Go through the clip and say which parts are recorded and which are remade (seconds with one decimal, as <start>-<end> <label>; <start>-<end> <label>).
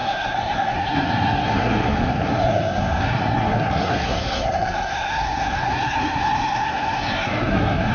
0.0-7.9 remade